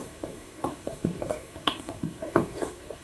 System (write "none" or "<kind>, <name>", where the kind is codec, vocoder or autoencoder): codec, SNAC